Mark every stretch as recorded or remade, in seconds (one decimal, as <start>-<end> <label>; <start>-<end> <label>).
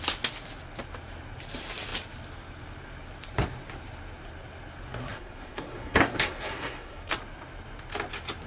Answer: 0.0-5.0 recorded; 5.0-7.1 remade; 7.1-8.5 recorded